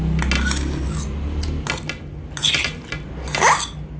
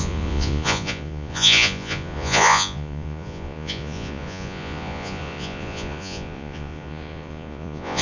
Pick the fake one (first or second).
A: second